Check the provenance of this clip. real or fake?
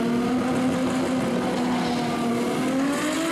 real